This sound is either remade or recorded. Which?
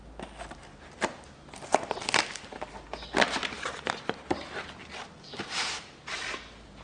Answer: recorded